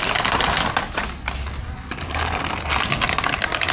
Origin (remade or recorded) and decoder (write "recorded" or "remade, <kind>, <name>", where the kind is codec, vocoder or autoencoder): recorded